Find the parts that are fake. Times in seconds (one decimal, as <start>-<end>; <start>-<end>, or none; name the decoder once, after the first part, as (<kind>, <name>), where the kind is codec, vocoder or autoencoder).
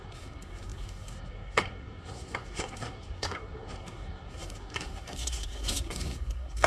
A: 0.0-6.7 (codec, SNAC)